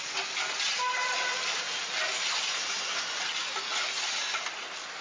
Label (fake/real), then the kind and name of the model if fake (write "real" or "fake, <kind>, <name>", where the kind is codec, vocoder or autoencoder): real